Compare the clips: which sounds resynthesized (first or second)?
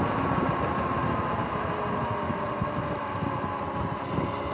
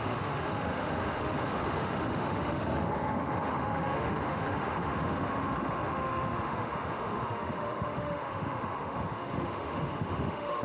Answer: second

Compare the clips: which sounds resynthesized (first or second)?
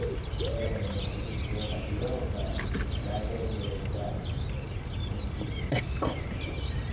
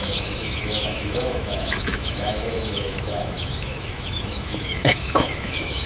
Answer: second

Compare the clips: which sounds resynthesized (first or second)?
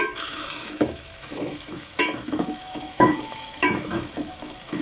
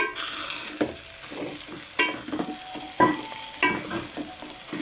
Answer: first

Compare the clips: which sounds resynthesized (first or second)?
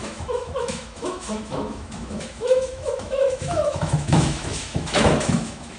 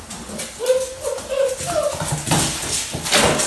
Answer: first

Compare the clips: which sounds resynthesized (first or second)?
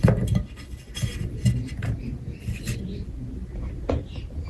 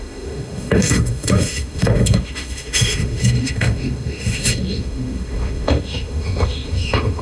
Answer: second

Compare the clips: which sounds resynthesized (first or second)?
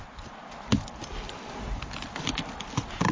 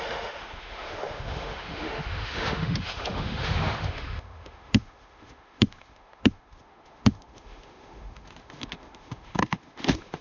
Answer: second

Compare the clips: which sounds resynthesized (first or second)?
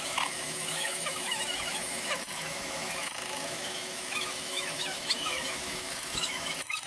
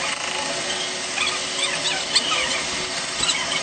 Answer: first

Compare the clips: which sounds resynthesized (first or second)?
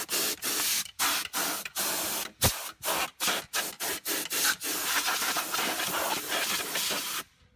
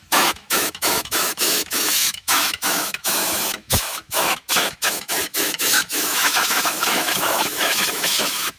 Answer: second